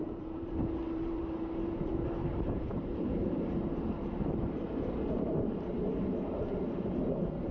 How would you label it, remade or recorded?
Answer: remade